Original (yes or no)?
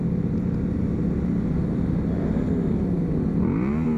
yes